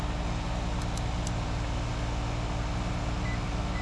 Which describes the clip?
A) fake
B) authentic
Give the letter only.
B